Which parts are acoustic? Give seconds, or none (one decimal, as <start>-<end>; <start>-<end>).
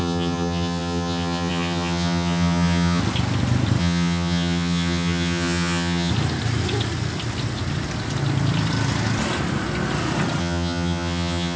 3.0-3.8; 6.1-10.4